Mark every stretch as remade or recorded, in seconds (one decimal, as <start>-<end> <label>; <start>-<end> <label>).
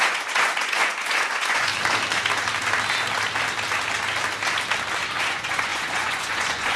0.0-1.7 remade; 1.7-5.2 recorded; 5.2-6.8 remade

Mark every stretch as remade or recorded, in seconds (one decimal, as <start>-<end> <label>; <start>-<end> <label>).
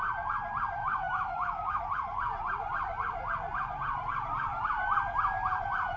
0.0-0.8 recorded; 0.8-1.8 remade; 1.8-6.0 recorded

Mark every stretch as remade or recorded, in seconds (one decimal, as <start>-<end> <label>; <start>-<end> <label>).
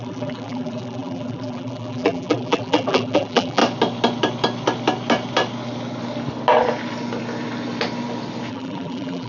0.0-3.6 remade; 3.6-8.5 recorded; 8.5-9.3 remade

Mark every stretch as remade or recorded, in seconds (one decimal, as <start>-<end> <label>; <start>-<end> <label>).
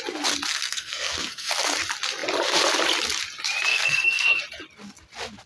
0.0-0.5 recorded; 0.5-1.5 remade; 1.5-3.7 recorded; 3.7-4.4 remade; 4.4-5.5 recorded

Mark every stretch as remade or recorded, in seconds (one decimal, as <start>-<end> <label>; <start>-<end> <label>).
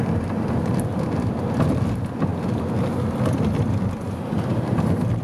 0.0-5.2 recorded